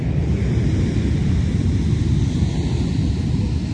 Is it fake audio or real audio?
real